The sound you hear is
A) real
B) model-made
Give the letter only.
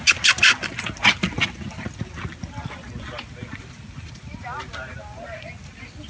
A